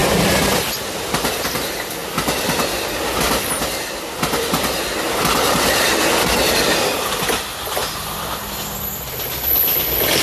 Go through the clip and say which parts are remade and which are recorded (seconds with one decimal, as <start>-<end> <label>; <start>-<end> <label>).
0.0-10.2 recorded